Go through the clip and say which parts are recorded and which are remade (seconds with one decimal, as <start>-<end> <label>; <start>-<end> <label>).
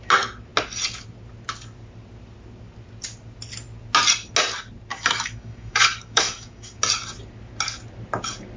0.0-4.9 recorded; 4.9-6.8 remade; 6.8-8.6 recorded